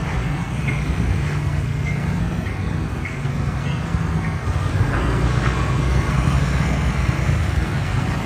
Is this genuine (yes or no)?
no